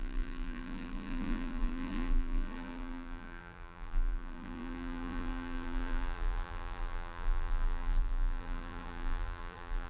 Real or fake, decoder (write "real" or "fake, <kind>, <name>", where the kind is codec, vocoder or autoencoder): fake, vocoder, BigVGAN v2